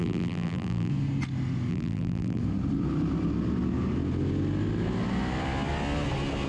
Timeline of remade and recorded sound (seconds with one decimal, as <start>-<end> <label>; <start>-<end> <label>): 0.0-0.9 remade; 0.9-1.7 recorded; 1.7-2.4 remade; 2.4-6.5 recorded